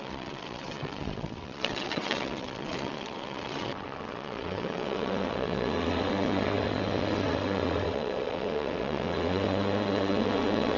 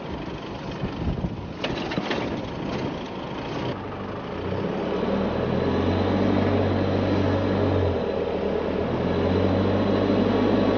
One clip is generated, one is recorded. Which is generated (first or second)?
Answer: first